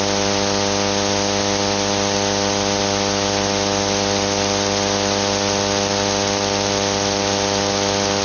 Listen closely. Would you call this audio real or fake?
real